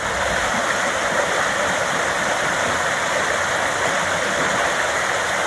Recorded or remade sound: recorded